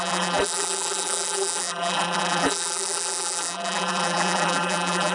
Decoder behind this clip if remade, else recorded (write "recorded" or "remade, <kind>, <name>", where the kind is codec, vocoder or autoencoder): remade, vocoder, BigVGAN v2